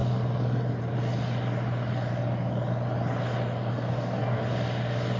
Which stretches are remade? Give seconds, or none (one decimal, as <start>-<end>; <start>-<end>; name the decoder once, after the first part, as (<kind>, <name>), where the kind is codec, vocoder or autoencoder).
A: 3.7-4.4 (codec, DAC)